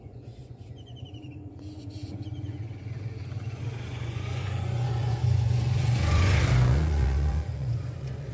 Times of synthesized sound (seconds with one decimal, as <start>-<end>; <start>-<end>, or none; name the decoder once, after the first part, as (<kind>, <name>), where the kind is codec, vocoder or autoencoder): 0.0-8.3 (vocoder, Vocos)